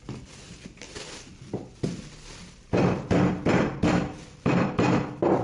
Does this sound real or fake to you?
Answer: fake